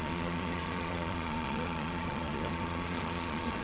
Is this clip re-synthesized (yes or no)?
yes